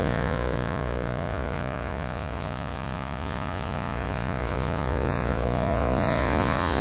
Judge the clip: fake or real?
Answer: fake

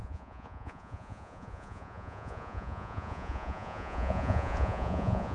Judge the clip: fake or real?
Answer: fake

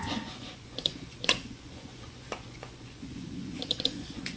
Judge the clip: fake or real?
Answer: fake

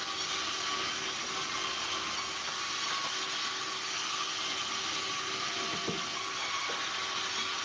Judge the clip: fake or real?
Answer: real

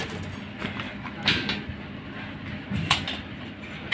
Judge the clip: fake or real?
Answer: real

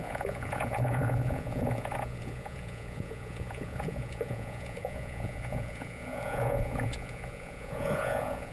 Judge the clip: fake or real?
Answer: fake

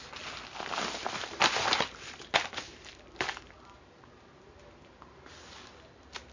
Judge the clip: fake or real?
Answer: real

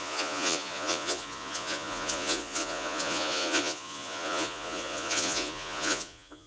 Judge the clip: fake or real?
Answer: fake